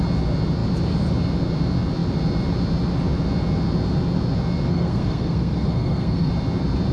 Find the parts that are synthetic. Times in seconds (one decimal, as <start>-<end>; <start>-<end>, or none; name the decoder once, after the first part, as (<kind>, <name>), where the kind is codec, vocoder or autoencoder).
4.7-6.3 (codec, SNAC)